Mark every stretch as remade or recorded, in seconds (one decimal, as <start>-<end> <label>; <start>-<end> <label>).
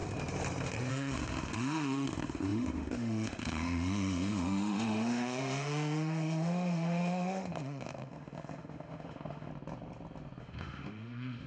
0.0-0.9 recorded; 0.9-9.5 remade; 9.5-10.4 recorded; 10.4-11.5 remade